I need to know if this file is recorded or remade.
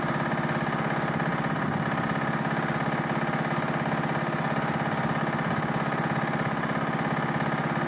recorded